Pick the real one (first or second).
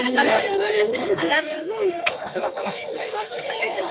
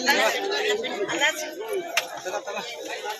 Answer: second